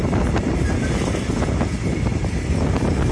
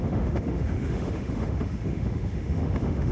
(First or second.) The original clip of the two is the first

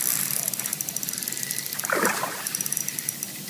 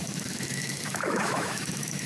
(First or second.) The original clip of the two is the first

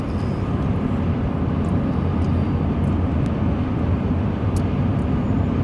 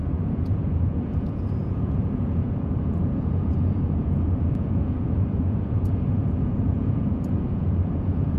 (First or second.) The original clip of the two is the first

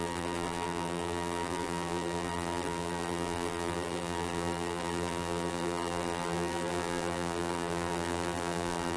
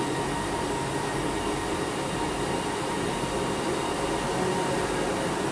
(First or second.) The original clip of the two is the second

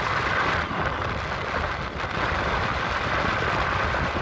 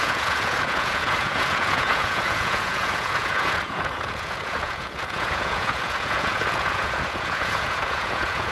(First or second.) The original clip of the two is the first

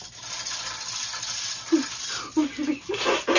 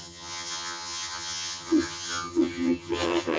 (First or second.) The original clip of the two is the first